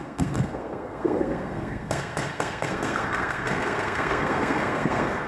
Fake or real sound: fake